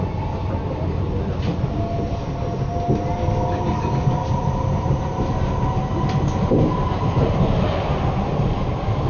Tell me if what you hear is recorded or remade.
recorded